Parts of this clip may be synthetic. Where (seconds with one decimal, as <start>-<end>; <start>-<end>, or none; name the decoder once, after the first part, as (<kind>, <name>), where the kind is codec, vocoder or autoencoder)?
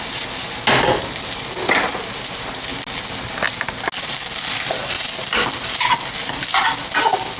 none